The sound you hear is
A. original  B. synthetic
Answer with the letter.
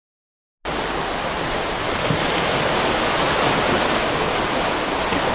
A